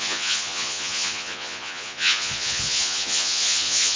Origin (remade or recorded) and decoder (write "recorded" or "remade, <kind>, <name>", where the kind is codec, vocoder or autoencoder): remade, vocoder, Vocos